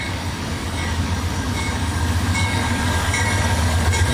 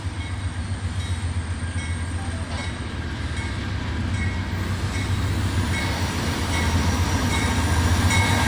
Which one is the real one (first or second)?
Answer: second